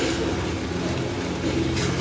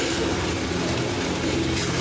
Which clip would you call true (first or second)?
first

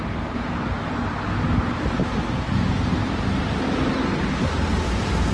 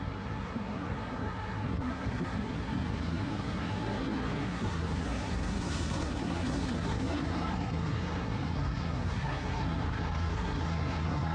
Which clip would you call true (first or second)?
first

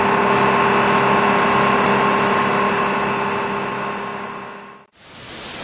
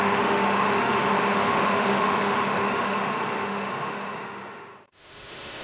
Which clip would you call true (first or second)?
first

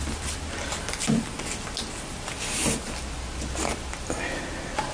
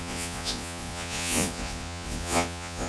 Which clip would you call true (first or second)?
first